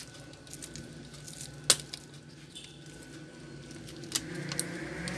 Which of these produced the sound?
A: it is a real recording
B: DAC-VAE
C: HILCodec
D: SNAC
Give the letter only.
A